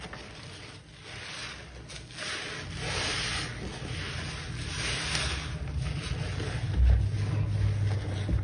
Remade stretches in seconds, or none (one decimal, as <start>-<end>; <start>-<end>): none